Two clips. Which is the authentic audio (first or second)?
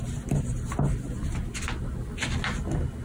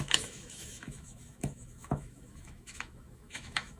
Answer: first